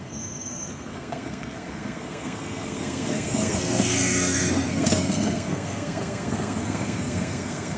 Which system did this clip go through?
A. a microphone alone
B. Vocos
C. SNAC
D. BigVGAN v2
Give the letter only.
C